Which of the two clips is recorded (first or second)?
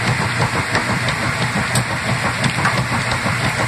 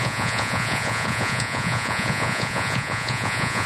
first